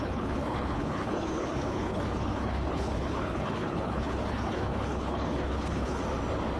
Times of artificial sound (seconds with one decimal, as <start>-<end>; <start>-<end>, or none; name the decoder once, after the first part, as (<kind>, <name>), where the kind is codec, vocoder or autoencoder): 0.0-6.0 (codec, HILCodec)